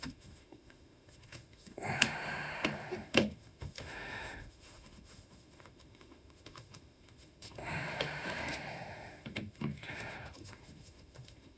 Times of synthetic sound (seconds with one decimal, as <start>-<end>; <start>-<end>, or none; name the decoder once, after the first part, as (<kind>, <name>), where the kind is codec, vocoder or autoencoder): 0.0-11.6 (autoencoder, DAC-VAE)